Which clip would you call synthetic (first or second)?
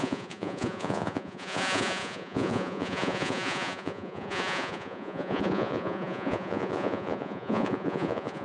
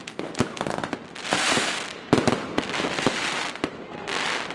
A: first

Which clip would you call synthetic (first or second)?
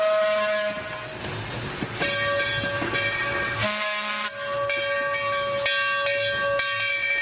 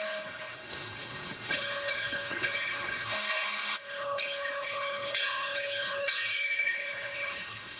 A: second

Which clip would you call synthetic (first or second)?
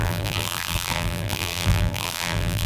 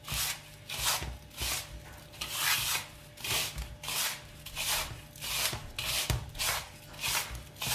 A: first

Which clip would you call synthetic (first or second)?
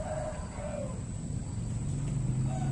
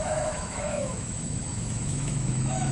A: second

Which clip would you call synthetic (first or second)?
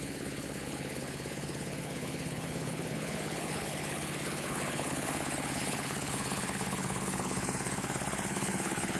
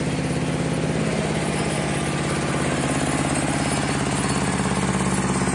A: first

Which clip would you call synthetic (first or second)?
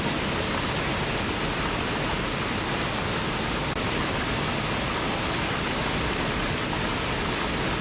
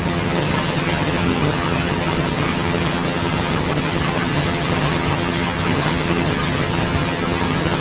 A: second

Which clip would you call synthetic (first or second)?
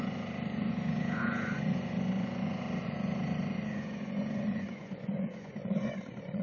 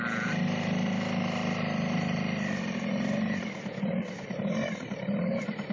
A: first